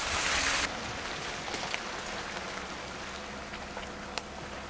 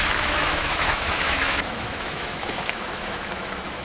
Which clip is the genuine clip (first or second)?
first